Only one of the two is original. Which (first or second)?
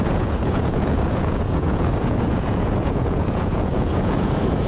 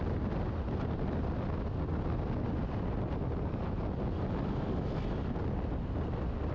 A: second